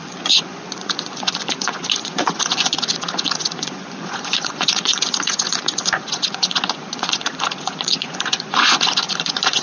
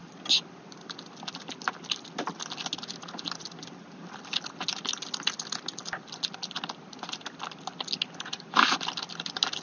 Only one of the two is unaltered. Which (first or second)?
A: second